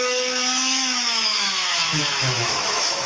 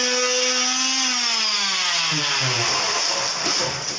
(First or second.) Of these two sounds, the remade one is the first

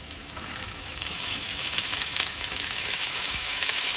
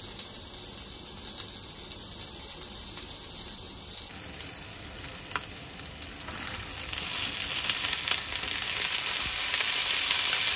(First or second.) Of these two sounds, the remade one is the first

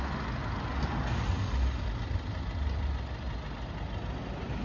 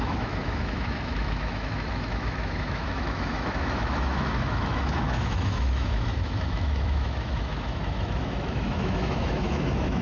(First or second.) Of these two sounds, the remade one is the second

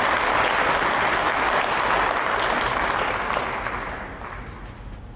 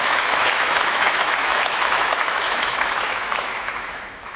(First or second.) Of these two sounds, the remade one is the second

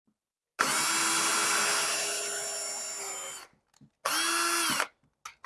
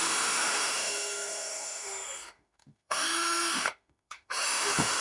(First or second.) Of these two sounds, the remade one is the second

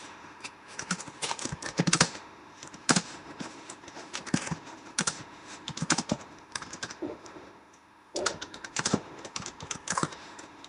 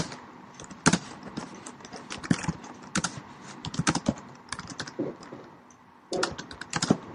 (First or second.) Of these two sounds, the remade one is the first